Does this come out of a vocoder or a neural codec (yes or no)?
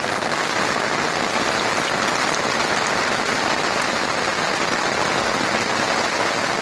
no